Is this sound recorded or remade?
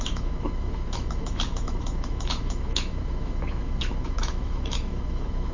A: remade